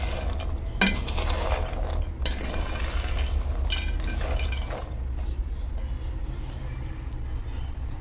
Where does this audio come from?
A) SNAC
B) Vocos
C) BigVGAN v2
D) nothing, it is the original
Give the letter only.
D